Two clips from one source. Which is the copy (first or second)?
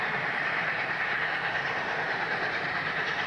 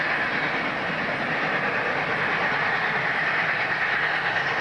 first